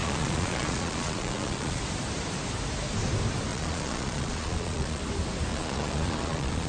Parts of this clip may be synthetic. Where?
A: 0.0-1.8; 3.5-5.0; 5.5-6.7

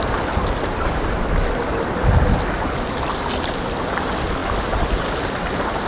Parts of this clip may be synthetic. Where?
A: none

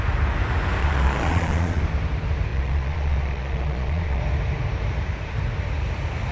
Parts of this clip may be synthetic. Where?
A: 0.8-1.8; 2.5-4.2

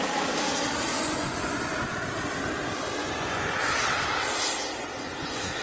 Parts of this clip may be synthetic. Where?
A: 0.9-1.7; 3.0-3.6; 4.8-5.6

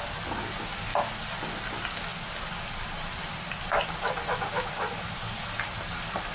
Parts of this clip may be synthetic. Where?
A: none

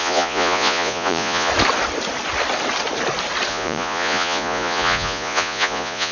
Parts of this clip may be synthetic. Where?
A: 0.0-1.5; 3.5-6.1

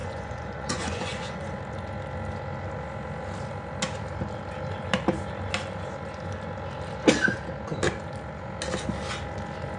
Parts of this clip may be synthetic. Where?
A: 0.0-1.6